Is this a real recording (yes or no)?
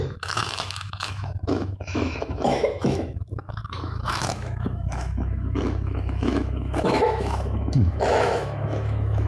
no